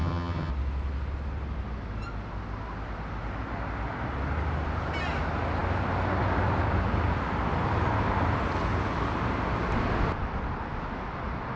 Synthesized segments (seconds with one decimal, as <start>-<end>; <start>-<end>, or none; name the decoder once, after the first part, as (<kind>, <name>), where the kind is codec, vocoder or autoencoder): 0.0-0.5 (vocoder, HiFi-GAN)